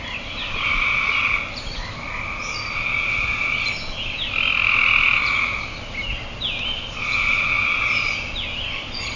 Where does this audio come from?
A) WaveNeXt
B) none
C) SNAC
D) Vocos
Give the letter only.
B